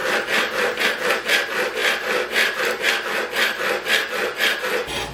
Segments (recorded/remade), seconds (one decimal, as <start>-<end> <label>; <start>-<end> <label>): 0.0-5.1 recorded